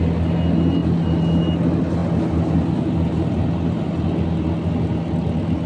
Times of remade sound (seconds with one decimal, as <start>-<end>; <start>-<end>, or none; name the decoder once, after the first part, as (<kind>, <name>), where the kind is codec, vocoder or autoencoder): none

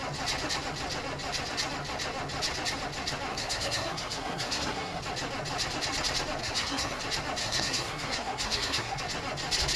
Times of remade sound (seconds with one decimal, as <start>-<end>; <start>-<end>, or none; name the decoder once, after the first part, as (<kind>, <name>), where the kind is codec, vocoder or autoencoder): 3.3-5.0 (codec, SNAC); 6.4-7.0; 7.4-9.0